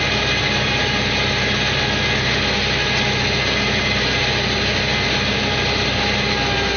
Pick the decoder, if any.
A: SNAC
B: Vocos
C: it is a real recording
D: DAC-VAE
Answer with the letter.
C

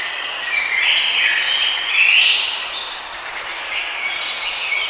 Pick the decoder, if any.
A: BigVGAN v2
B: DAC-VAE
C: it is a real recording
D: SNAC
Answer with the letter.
C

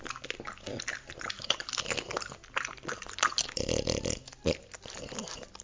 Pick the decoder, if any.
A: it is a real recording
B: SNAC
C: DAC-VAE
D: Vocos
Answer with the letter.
A